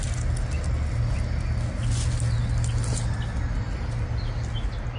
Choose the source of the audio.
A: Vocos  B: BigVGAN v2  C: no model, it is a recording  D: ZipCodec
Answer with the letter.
C